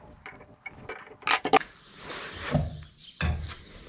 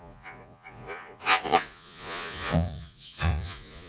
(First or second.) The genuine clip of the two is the first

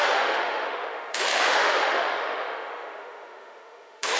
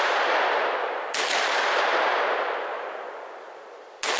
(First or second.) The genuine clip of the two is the second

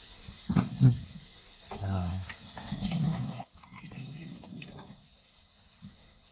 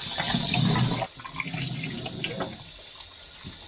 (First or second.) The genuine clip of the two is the second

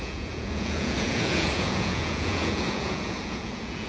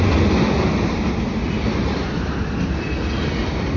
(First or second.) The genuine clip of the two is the second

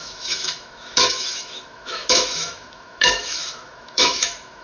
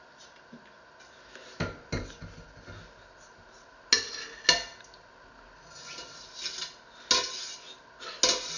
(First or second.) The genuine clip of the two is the second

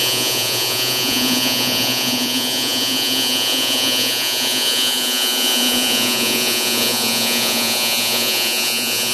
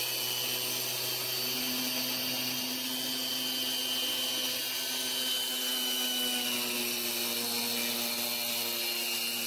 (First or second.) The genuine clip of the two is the second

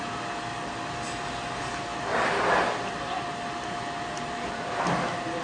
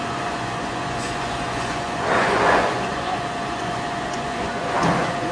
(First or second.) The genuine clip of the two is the first